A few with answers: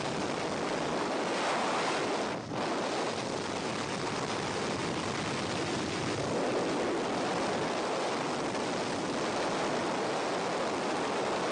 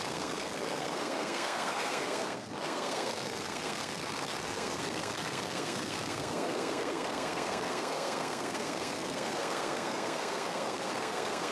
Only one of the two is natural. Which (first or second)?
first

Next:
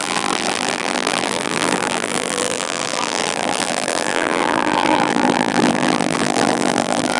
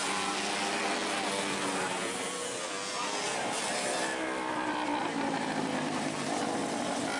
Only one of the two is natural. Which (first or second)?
second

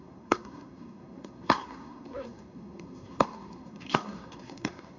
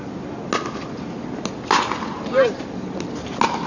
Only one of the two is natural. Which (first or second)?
second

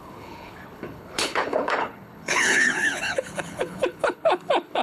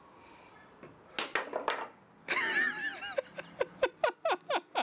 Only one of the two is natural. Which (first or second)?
second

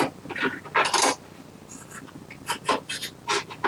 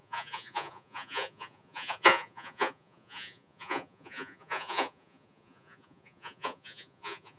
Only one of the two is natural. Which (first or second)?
first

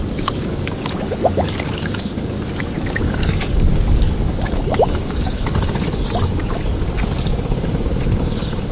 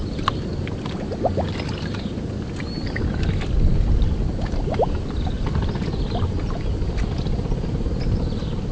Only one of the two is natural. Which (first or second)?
second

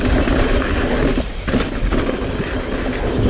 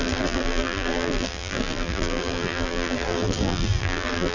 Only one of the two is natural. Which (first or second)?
first